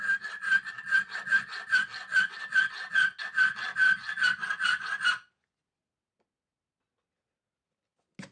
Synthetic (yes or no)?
no